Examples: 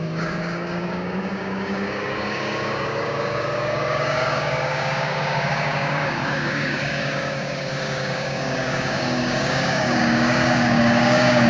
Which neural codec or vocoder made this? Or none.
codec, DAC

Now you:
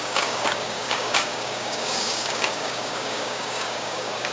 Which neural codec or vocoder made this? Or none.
codec, DAC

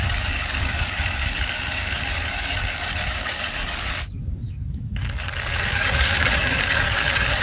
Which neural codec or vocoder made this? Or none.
codec, DAC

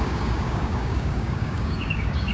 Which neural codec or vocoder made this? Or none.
codec, DAC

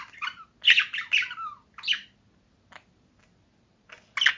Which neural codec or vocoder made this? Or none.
none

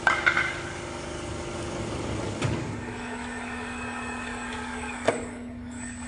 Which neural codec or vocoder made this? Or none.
codec, DAC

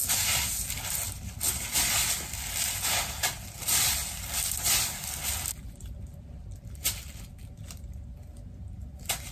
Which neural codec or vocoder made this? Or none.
none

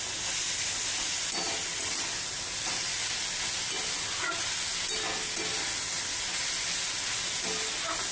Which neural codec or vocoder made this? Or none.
none